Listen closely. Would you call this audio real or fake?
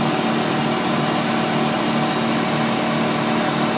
real